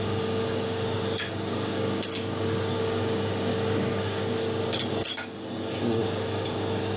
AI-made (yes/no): yes